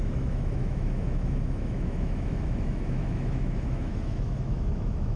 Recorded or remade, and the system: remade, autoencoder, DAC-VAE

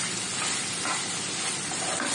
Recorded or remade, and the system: recorded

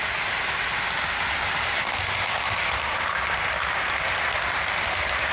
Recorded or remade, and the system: recorded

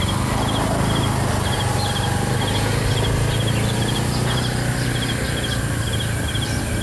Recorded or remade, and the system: recorded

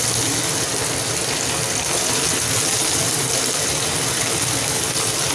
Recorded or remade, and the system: recorded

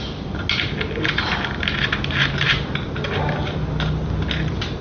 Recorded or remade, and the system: recorded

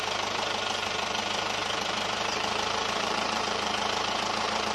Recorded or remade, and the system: remade, vocoder, BigVGAN v2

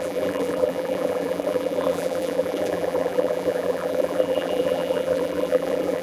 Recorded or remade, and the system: remade, vocoder, BigVGAN v2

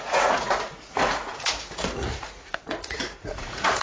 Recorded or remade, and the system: remade, vocoder, Vocos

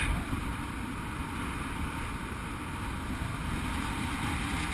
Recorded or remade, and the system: recorded